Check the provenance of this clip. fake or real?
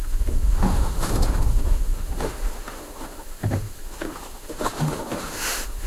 fake